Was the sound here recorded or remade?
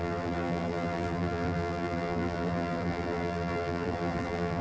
remade